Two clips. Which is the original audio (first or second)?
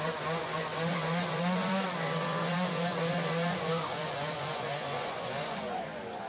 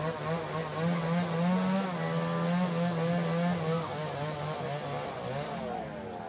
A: second